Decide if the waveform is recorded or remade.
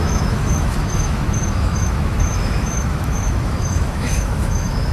remade